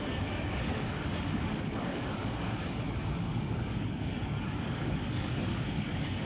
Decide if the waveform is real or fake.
fake